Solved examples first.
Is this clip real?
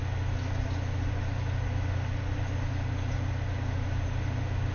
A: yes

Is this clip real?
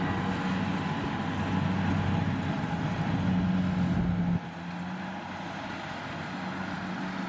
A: yes